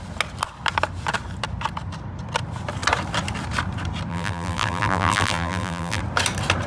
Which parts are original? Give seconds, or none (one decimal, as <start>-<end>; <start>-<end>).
0.0-4.1; 6.0-6.7